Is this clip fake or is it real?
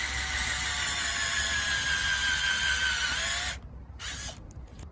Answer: real